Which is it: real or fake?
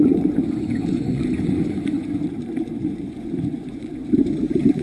fake